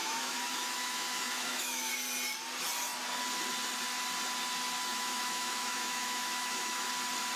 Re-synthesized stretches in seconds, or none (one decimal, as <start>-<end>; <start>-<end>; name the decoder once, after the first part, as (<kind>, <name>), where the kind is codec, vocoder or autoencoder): 0.0-1.9 (autoencoder, DAC-VAE); 4.9-6.9